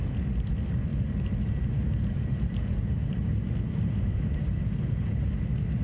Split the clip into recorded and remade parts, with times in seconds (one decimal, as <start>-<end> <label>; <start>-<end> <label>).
0.0-0.9 recorded; 0.9-4.4 remade; 4.4-5.8 recorded